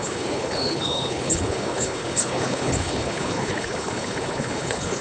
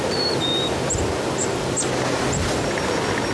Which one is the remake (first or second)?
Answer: first